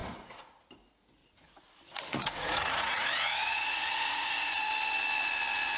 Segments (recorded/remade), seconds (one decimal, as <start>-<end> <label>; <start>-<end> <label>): 0.0-0.7 remade; 0.7-1.2 recorded; 1.2-4.7 remade; 4.7-5.8 recorded